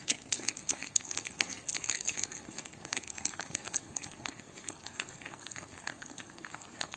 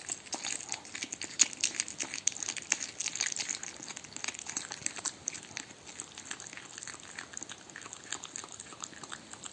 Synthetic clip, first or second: first